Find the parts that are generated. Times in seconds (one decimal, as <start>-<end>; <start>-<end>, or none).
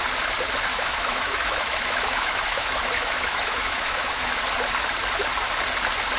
0.7-4.4